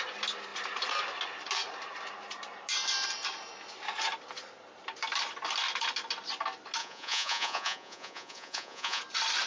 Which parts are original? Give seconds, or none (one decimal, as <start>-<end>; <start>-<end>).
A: 0.0-6.8; 9.0-9.5